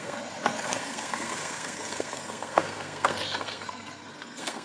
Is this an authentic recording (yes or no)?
no